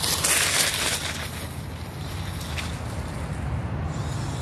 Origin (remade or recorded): recorded